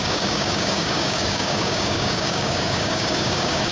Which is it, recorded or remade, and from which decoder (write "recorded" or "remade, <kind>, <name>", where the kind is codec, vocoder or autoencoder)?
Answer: remade, codec, DAC